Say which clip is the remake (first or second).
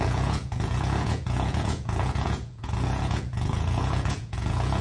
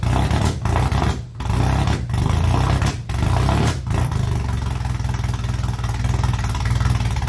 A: first